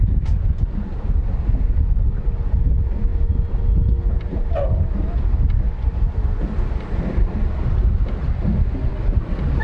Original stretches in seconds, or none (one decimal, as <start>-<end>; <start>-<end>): 0.0-9.6